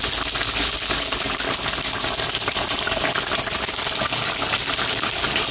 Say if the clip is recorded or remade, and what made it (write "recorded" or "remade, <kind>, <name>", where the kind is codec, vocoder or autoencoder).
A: recorded